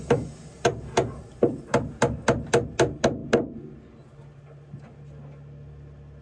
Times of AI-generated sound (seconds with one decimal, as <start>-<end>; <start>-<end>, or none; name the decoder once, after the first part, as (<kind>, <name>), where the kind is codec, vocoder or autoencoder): none